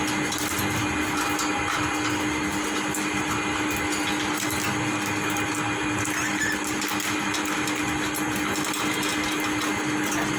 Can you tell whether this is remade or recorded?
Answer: recorded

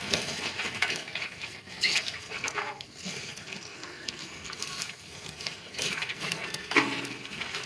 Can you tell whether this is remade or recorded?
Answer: remade